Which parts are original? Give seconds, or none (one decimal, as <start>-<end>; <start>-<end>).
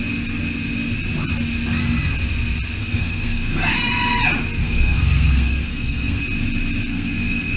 0.0-2.8; 3.9-4.6; 6.2-6.9